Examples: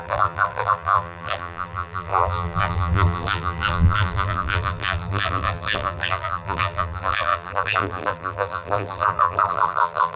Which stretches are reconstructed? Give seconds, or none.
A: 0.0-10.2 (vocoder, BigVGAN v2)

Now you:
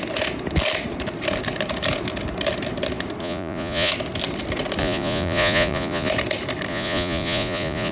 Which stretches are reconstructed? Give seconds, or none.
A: 3.2-3.9 (vocoder, Vocos); 4.8-6.1; 6.7-7.9

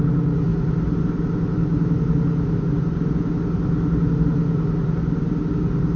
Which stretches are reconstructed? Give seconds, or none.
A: none